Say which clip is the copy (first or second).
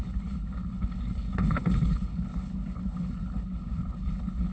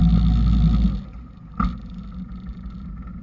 first